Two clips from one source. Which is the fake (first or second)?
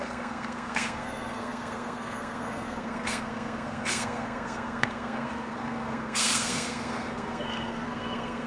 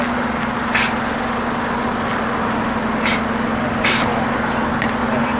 first